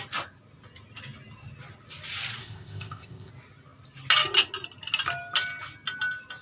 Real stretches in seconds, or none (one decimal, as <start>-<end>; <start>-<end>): 0.0-2.4; 3.3-6.4